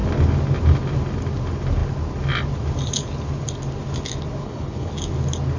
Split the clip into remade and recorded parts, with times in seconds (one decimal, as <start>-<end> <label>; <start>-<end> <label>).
0.0-4.4 recorded; 4.4-4.9 remade; 4.9-5.6 recorded